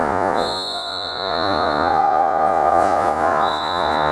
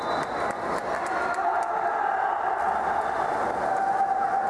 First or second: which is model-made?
first